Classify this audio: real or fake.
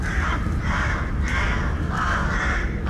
real